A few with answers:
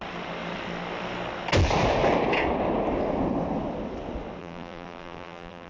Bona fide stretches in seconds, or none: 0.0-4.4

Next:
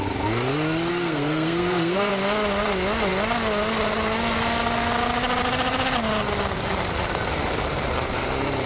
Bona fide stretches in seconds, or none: 0.0-0.9; 2.1-8.7

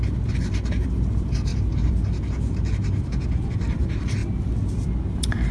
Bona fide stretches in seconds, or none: 0.0-5.5